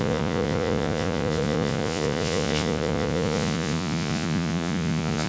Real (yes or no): no